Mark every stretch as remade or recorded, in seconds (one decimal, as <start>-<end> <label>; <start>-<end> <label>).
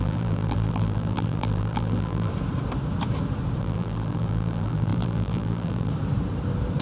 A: 0.0-2.3 remade; 2.3-3.6 recorded; 3.6-5.9 remade; 5.9-6.8 recorded